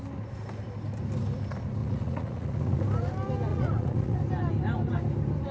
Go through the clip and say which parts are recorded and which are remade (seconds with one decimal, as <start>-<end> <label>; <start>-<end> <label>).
0.0-1.8 recorded; 1.8-2.8 remade; 2.8-3.5 recorded; 3.5-4.2 remade; 4.2-5.5 recorded

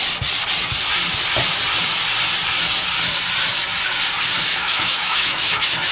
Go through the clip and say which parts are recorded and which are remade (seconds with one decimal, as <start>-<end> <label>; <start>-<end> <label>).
0.0-4.5 recorded; 4.5-5.9 remade

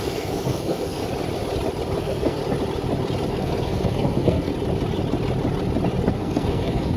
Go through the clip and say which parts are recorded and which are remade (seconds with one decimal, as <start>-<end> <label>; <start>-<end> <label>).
0.0-1.0 remade; 1.0-2.0 recorded; 2.0-2.4 remade; 2.4-3.3 recorded; 3.3-4.5 remade; 4.5-6.1 recorded; 6.1-7.0 remade

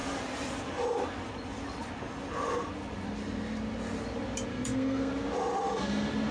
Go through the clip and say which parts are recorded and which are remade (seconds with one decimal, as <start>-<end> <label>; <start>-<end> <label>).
0.0-4.5 recorded; 4.5-5.1 remade; 5.1-6.3 recorded

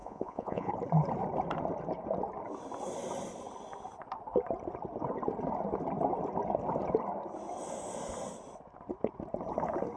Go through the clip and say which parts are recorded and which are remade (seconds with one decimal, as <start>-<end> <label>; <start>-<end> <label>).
0.0-0.7 remade; 0.7-10.0 recorded